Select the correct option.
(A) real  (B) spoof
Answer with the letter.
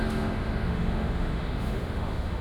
B